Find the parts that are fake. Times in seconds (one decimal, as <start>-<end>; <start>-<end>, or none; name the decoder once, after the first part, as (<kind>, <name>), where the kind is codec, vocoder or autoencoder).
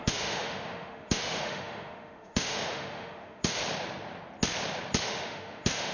0.0-3.6 (autoencoder, DAC-VAE); 5.0-5.9